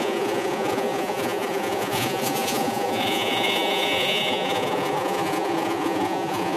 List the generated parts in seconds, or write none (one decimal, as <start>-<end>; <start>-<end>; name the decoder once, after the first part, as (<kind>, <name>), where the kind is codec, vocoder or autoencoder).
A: 0.0-6.6 (vocoder, Vocos)